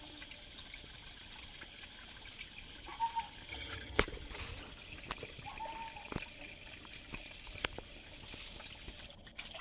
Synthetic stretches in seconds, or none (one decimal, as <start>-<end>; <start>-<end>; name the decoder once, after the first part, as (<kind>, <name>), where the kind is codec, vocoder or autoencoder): 3.5-4.0 (vocoder, HiFi-GAN)